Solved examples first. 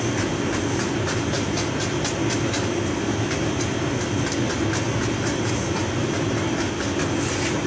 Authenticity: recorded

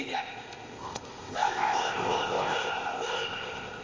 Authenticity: remade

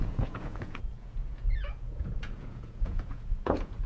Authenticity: remade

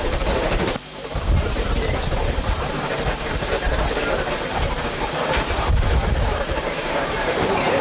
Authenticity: remade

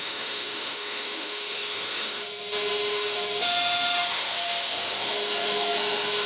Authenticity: remade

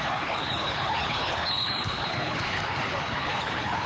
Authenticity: remade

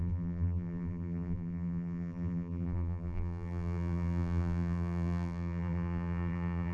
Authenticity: remade